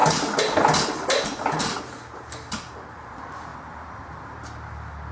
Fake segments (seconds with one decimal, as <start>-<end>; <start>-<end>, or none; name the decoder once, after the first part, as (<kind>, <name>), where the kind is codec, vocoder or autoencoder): 3.5-4.2 (vocoder, BigVGAN v2)